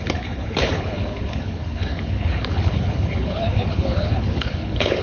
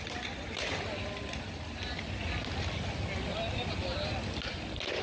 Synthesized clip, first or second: first